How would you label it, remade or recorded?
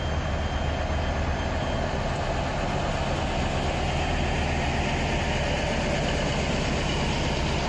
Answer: recorded